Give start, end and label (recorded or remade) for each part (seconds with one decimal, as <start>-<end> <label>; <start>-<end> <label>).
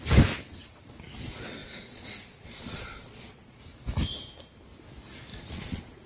0.0-1.6 recorded; 1.6-3.6 remade; 3.6-5.3 recorded; 5.3-6.1 remade